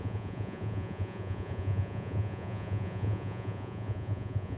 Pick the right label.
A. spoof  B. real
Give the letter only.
A